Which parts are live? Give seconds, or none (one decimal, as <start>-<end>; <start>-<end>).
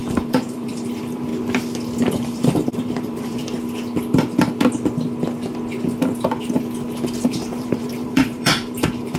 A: 1.3-2.0; 3.4-7.3